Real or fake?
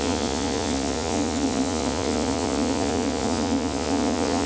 fake